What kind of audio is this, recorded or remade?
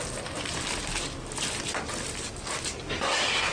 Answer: recorded